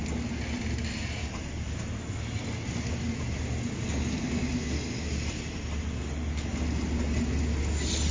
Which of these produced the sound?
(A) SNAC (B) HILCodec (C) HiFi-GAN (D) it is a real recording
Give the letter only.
D